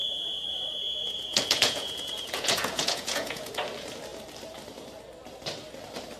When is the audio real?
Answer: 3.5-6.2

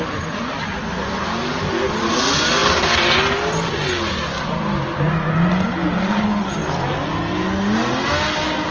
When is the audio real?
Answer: 0.0-8.7

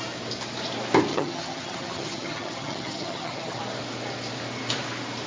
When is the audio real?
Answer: 0.0-1.1; 3.6-5.3